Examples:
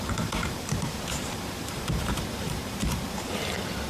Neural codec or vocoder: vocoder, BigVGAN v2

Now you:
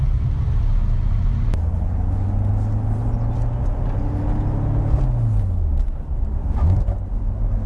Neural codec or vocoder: none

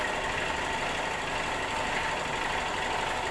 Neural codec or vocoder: none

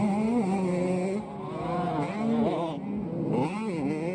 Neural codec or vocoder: none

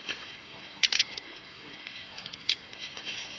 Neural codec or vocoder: codec, SNAC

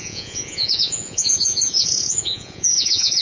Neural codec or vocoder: vocoder, Vocos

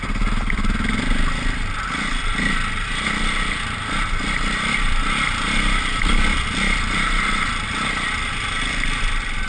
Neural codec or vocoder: none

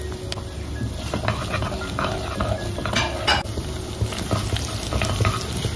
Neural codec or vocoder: none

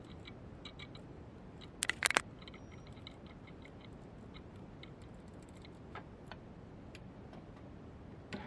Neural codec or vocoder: none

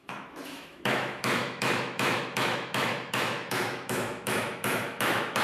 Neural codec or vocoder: autoencoder, DAC-VAE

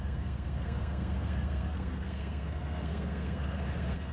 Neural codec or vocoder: codec, SNAC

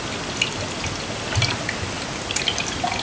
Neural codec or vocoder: none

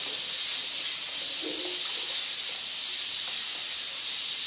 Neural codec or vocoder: none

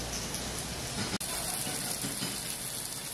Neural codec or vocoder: none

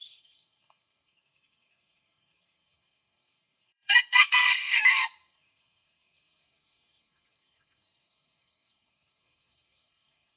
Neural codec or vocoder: codec, SNAC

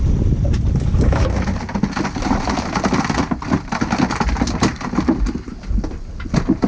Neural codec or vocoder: none